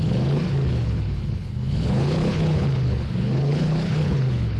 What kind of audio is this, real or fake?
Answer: fake